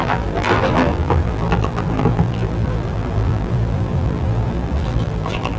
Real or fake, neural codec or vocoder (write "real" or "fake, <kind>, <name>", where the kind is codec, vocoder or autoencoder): fake, vocoder, BigVGAN v2